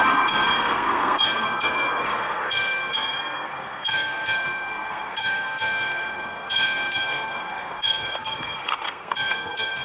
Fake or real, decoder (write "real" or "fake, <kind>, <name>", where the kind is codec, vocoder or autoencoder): fake, codec, SNAC